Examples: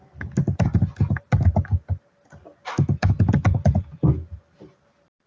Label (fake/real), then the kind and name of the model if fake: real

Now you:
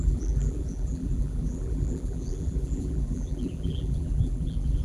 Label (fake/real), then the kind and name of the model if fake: fake, vocoder, BigVGAN v2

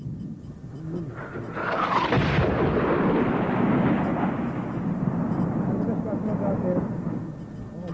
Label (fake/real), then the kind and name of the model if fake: real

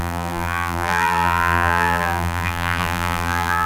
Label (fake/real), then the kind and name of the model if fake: fake, vocoder, BigVGAN v2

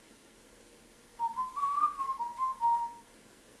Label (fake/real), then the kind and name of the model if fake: fake, codec, SNAC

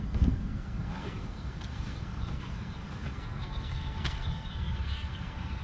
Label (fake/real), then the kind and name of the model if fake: fake, codec, SNAC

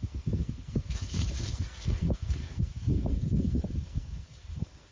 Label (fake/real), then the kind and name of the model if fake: fake, codec, SNAC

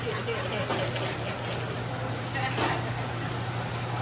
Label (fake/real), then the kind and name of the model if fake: real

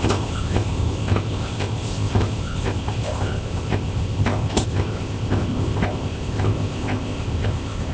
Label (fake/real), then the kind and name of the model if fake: fake, codec, ZipCodec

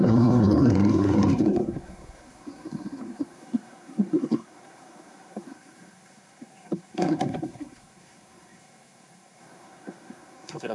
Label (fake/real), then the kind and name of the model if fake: fake, codec, SNAC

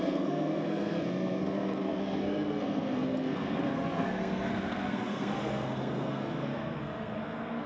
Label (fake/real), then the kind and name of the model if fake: fake, codec, SNAC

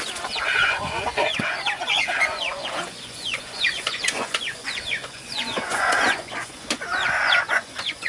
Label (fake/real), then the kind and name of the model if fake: fake, vocoder, Vocos